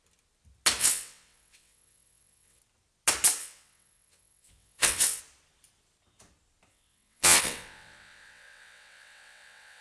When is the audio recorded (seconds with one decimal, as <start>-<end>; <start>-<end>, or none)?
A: 0.0-0.8; 2.6-3.4; 5.2-6.7